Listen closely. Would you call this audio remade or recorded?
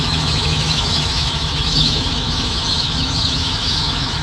remade